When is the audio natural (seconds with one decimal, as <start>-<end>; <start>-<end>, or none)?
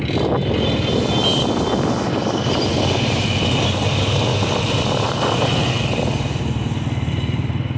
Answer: 0.0-7.8